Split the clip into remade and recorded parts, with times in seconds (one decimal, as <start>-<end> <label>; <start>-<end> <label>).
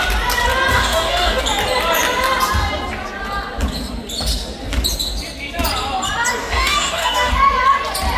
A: 0.0-0.7 recorded; 0.7-1.4 remade; 1.4-6.4 recorded; 6.4-7.3 remade; 7.3-8.2 recorded